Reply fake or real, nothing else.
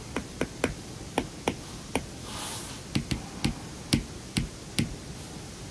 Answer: real